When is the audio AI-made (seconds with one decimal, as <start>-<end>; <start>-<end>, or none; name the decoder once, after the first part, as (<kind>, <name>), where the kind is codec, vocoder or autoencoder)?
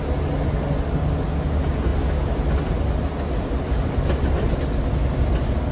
none